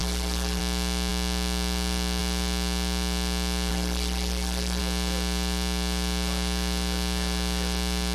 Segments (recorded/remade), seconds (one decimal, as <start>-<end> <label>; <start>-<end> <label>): 0.0-0.6 remade; 0.6-3.7 recorded; 3.7-4.8 remade; 4.8-8.1 recorded